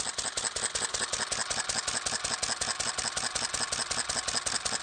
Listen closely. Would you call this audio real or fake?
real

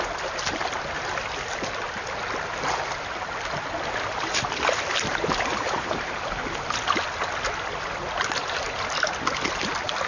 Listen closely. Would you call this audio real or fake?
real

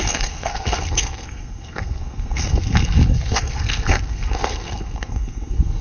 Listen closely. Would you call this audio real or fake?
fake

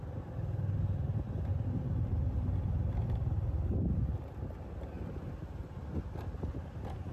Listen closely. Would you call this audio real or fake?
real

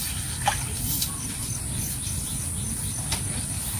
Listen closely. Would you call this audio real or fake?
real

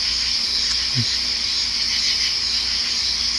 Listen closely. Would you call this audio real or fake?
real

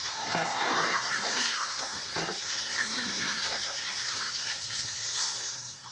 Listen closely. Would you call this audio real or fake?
fake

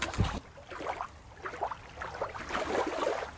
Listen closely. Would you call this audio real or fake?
real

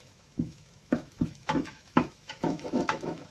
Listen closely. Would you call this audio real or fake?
fake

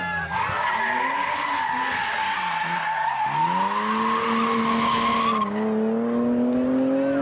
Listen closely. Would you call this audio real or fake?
real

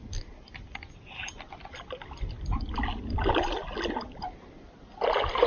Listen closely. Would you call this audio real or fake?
real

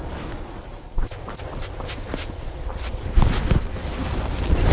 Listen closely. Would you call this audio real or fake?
real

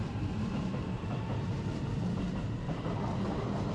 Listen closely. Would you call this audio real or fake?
fake